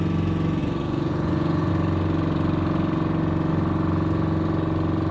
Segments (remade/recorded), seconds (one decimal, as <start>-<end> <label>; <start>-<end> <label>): 0.0-0.6 recorded; 0.6-1.7 remade; 1.7-5.1 recorded